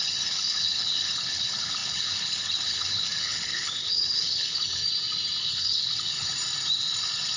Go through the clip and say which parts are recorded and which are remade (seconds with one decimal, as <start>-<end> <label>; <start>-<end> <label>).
0.0-4.8 remade; 4.8-5.4 recorded; 5.4-6.3 remade; 6.3-7.4 recorded